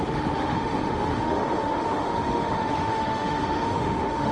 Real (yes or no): no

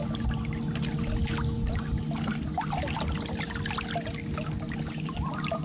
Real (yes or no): yes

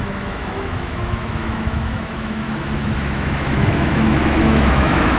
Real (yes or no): no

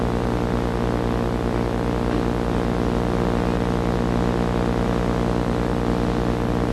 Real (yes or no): yes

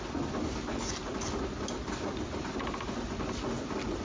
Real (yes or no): yes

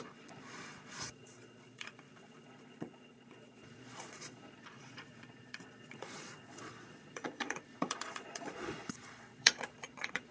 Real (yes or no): no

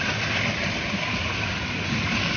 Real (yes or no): yes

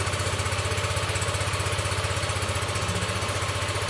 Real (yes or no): yes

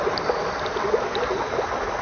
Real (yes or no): yes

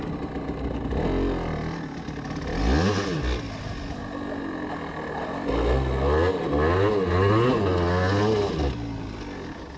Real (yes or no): yes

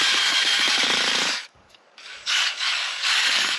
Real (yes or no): no